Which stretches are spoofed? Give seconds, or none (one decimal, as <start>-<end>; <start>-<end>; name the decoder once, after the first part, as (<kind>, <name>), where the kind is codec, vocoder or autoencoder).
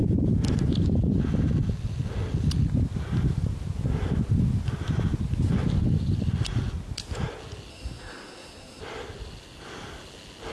7.7-8.8 (codec, SNAC)